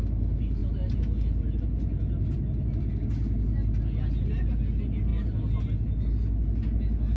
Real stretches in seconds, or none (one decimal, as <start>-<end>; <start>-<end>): 0.0-7.2